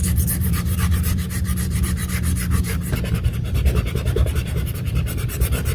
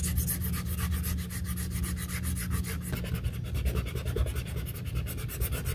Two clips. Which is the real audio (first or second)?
second